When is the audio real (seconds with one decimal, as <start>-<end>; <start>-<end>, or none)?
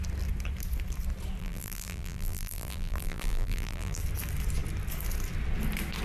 0.0-1.4; 4.0-6.0